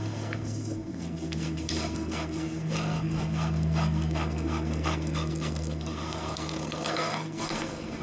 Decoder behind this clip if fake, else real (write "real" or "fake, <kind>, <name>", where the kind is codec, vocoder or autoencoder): fake, codec, SNAC